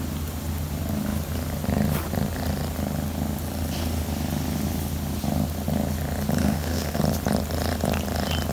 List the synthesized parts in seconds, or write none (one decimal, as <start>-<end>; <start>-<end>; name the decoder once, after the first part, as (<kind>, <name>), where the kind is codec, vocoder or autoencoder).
6.4-7.0 (autoencoder, DAC-VAE)